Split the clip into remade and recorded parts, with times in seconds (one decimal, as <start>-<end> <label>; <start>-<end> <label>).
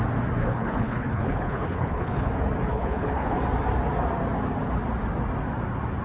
0.0-0.4 recorded; 0.4-2.3 remade; 2.3-2.7 recorded; 2.7-3.4 remade; 3.4-6.0 recorded